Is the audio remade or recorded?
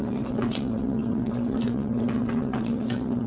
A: remade